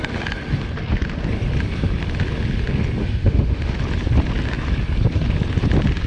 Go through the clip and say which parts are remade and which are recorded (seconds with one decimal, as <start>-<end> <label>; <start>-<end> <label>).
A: 0.0-3.0 recorded; 3.0-3.8 remade; 3.8-6.1 recorded